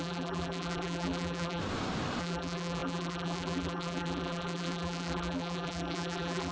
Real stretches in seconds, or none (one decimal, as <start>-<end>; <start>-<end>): 1.6-2.2